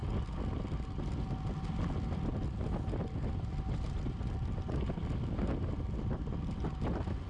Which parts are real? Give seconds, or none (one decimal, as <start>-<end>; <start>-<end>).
0.0-7.3